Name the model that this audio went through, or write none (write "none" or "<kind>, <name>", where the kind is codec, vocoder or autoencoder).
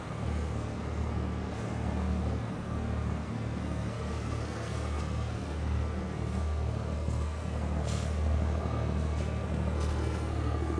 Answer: codec, SNAC